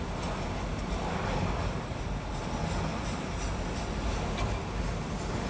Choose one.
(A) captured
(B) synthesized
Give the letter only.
A